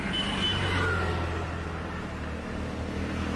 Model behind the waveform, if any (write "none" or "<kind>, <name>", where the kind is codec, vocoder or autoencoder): none